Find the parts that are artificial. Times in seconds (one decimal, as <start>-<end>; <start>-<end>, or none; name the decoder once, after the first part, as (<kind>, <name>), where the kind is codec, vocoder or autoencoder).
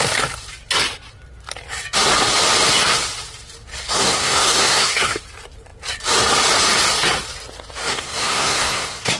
3.7-5.2 (codec, SNAC); 7.8-9.2